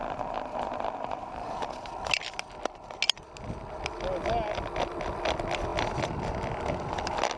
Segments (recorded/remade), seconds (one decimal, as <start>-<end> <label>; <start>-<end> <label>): 0.0-1.7 remade; 1.7-7.4 recorded